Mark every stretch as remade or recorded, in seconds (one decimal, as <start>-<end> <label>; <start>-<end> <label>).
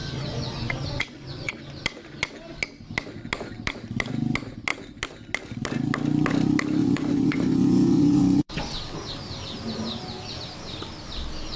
0.0-1.5 remade; 1.5-6.8 recorded; 6.8-8.8 remade; 8.8-11.6 recorded